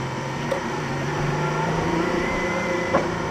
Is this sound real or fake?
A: fake